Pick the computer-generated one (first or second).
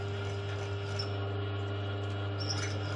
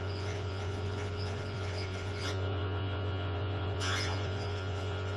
second